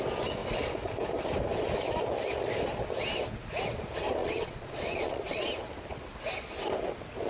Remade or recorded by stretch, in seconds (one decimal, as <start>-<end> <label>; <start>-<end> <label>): 0.0-4.2 recorded; 4.2-5.5 remade; 5.5-7.3 recorded